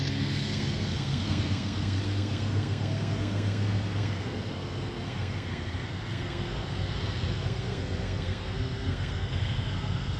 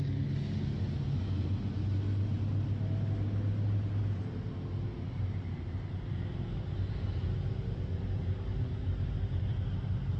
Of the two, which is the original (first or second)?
second